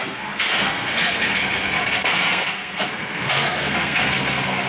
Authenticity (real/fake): fake